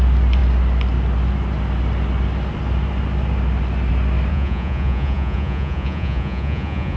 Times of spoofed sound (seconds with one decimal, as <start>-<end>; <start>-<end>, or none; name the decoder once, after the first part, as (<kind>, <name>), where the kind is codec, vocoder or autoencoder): 4.3-7.0 (vocoder, Vocos)